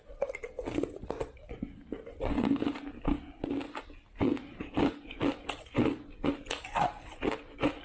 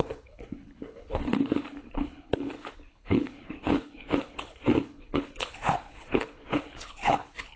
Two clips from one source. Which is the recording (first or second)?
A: first